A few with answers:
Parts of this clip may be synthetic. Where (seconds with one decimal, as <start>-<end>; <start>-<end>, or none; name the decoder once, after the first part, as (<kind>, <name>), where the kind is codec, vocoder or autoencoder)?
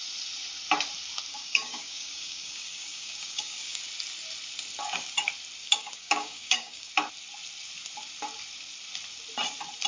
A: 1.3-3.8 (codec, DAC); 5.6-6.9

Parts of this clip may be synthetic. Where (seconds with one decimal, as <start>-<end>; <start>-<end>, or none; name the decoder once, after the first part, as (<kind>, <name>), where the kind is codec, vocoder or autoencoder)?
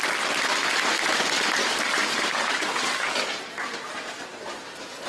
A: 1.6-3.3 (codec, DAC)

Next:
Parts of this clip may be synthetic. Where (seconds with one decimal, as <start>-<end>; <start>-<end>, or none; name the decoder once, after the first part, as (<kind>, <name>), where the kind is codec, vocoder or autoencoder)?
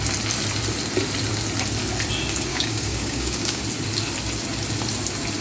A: 2.5-3.6 (codec, DAC)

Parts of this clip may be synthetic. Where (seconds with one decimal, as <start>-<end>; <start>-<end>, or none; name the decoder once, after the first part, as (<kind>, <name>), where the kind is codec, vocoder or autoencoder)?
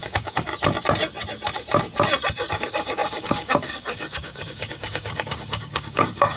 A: 0.0-0.5 (codec, DAC); 2.5-6.4